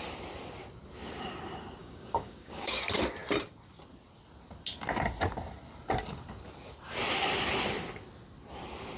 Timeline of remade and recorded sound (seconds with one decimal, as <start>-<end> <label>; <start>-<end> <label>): 0.0-1.8 recorded; 1.8-2.8 remade; 2.8-9.0 recorded